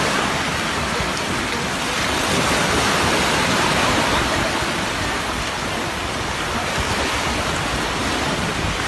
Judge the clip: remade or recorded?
recorded